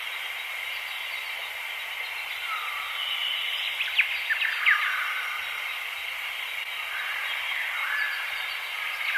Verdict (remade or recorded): recorded